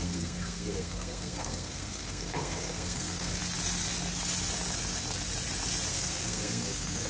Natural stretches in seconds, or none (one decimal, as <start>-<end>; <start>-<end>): 3.4-5.9